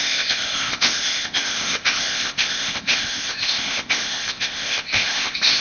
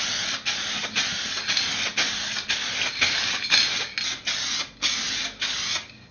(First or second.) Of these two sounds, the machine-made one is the first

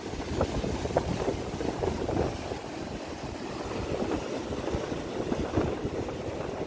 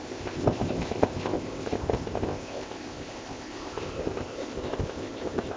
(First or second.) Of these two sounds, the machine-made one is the second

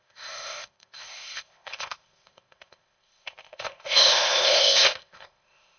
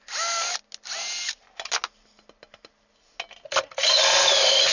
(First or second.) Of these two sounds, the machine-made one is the first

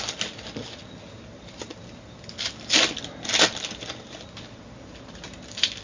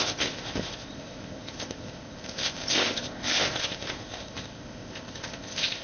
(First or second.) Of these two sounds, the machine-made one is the second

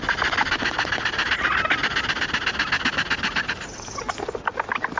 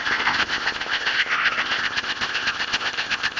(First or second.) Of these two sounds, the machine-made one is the second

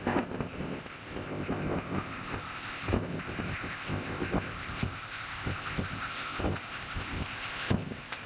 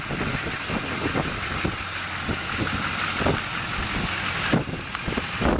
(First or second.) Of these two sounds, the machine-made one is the first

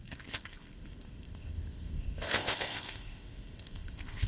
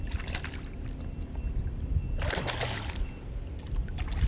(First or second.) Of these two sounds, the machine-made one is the first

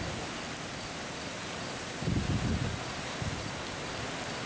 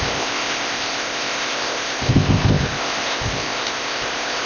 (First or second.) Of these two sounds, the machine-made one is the second